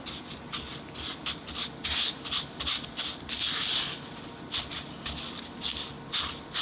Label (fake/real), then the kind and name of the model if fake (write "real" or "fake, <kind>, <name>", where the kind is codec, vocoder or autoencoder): real